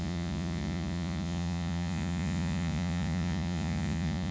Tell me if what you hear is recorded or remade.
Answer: remade